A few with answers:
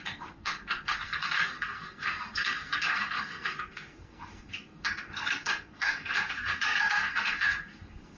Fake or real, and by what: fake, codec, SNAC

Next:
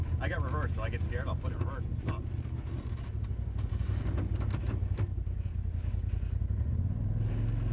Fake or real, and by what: real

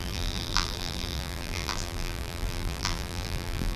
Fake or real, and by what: fake, vocoder, BigVGAN v2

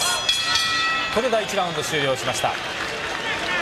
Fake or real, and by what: real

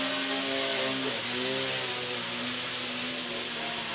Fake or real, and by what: real